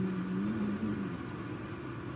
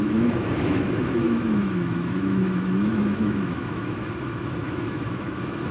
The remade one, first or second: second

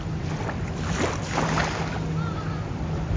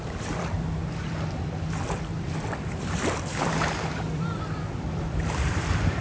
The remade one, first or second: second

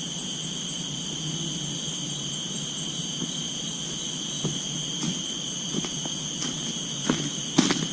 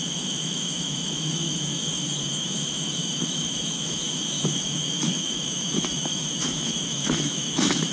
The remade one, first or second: second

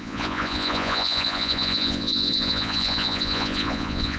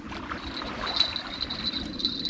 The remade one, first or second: first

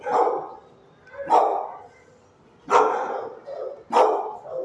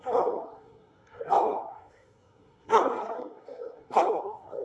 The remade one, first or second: second